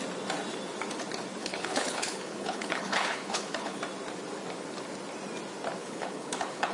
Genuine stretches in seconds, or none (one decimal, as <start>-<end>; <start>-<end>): 0.0-1.4; 3.8-5.8